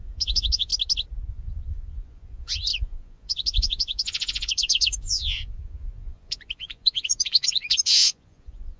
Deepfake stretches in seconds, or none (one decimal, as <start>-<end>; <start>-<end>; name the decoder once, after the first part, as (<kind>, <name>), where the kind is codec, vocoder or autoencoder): 0.0-0.7 (vocoder, Vocos); 1.3-8.8